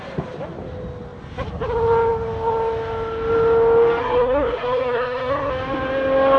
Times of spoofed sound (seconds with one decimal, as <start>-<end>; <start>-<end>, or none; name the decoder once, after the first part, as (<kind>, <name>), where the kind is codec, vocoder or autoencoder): 4.0-5.5 (codec, SNAC)

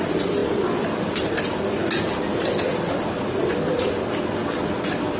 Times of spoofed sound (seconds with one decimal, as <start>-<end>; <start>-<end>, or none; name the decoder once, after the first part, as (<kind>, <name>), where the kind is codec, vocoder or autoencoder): 0.4-1.4 (vocoder, BigVGAN v2)

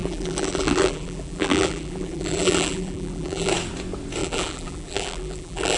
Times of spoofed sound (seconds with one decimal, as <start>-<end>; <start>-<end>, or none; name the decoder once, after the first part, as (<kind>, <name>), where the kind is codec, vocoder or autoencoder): 0.0-3.5 (vocoder, BigVGAN v2); 4.2-5.8

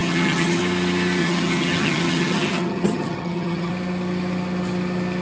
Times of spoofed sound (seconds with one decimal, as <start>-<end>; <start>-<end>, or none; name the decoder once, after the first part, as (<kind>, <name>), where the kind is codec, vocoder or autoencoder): 0.0-0.6 (vocoder, HiFi-GAN); 1.2-3.7

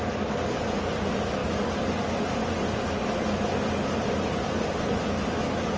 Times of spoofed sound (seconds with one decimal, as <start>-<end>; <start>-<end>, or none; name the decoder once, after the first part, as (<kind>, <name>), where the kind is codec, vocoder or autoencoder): none

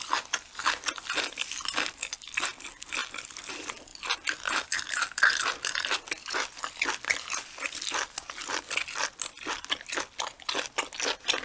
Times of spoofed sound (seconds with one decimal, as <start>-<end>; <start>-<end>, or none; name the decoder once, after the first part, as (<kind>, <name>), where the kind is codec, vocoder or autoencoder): none

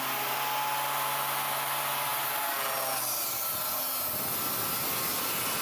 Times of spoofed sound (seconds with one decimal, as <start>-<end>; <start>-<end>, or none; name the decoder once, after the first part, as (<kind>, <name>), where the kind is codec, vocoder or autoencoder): none

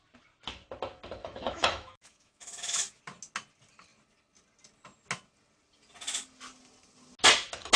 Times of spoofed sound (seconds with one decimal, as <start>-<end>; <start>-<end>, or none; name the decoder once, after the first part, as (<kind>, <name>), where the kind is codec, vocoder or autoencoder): 1.2-3.0 (autoencoder, DAC-VAE)